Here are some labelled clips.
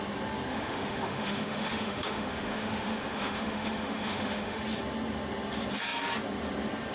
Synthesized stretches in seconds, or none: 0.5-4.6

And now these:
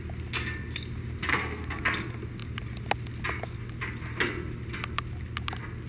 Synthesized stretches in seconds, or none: 1.3-1.8